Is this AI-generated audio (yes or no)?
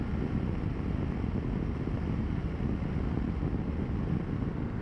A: no